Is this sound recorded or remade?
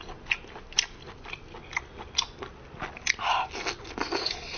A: recorded